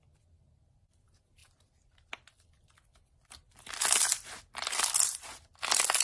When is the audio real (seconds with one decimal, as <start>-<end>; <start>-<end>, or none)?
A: 0.0-6.0